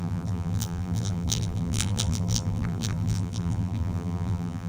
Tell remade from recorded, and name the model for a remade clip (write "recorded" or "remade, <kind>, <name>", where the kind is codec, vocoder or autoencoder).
remade, vocoder, BigVGAN v2